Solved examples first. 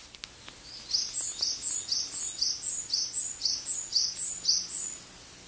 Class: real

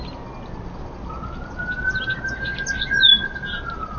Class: real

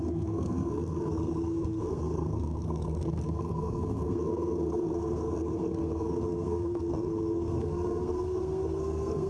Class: fake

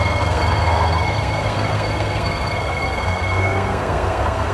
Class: fake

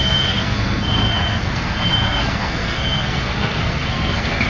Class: fake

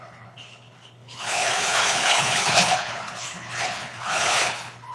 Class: fake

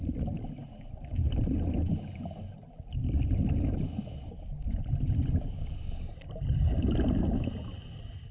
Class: real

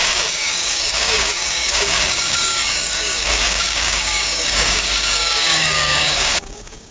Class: fake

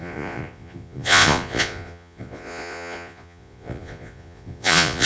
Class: fake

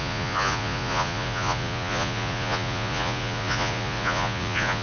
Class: fake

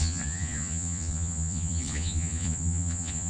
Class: fake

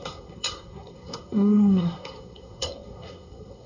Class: fake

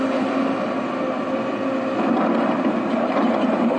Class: real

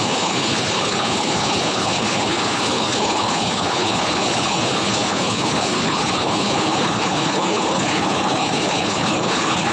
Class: fake